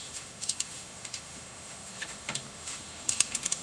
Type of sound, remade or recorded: remade